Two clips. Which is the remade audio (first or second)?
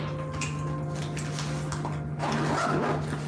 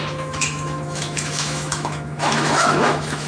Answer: second